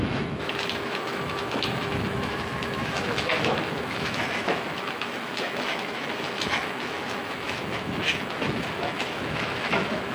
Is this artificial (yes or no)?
yes